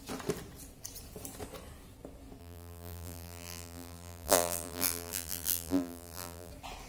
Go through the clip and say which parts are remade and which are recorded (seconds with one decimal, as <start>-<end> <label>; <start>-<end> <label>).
0.0-2.4 recorded; 2.4-6.5 remade; 6.5-6.9 recorded